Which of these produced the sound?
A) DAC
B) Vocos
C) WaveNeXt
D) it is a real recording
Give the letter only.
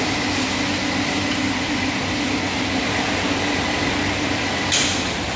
D